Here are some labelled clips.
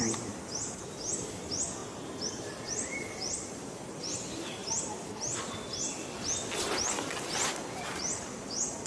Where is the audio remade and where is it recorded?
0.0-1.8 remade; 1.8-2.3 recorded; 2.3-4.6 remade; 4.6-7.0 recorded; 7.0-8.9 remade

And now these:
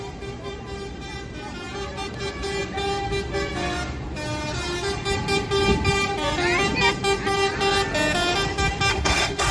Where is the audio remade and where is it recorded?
0.0-8.9 recorded; 8.9-9.5 remade